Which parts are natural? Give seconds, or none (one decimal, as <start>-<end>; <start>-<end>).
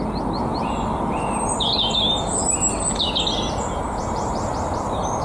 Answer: 0.0-5.2